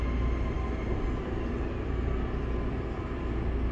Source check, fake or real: real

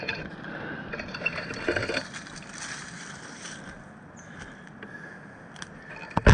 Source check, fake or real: real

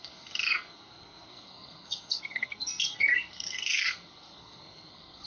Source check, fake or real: fake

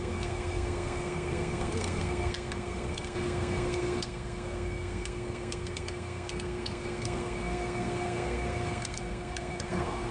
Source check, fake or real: fake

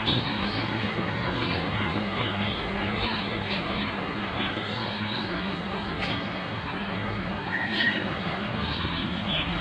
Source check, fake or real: fake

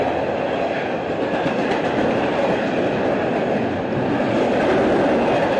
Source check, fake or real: real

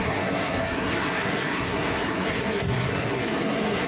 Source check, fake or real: fake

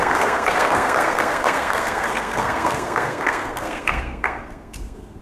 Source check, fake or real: fake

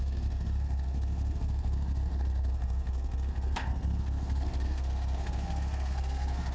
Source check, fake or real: fake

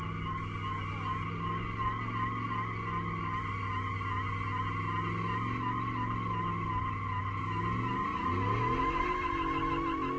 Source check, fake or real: real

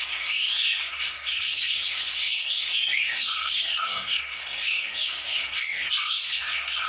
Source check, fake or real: fake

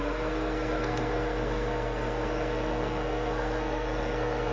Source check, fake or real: fake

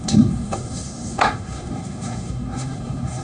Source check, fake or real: fake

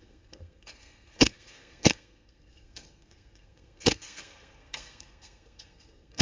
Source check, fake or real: fake